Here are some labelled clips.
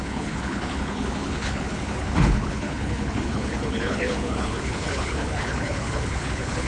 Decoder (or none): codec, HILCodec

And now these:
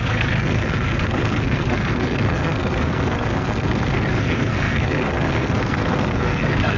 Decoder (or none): codec, SNAC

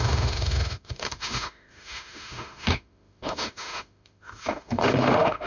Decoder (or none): autoencoder, DAC-VAE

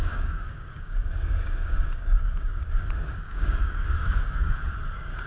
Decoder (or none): codec, DAC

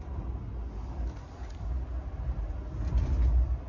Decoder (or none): none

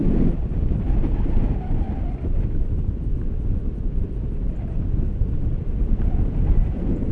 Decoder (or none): none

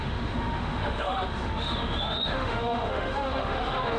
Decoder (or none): autoencoder, DAC-VAE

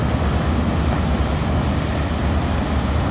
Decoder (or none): none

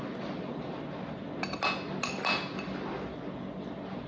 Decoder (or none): none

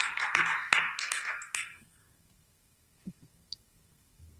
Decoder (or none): codec, SNAC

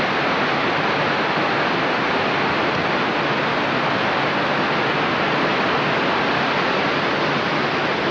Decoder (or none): none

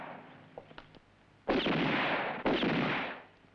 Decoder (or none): none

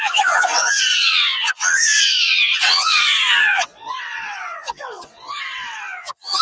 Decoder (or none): vocoder, WaveNeXt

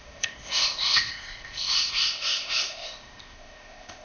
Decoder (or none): codec, ZipCodec